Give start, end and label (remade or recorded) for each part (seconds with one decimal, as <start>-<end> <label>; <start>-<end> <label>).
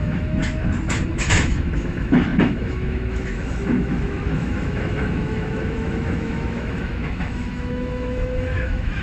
0.0-0.4 remade; 0.4-1.1 recorded; 1.1-9.0 remade